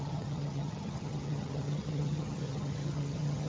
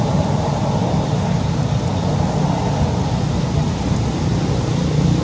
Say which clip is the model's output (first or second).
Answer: first